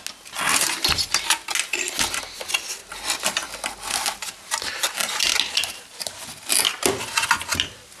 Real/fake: real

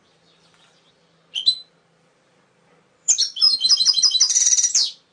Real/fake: fake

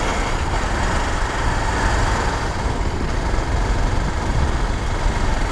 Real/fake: real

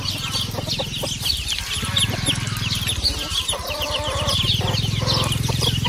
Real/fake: real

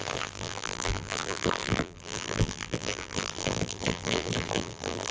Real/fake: fake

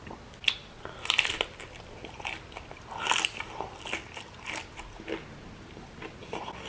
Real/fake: real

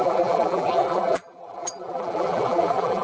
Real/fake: fake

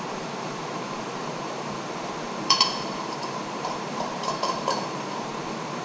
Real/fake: fake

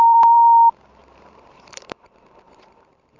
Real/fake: fake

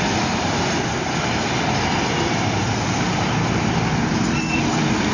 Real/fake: fake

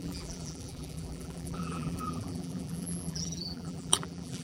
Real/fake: fake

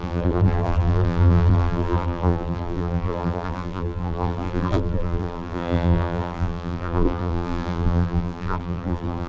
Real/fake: fake